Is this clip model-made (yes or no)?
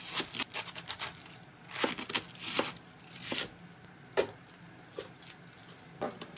no